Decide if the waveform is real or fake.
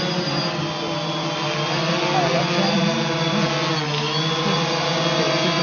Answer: real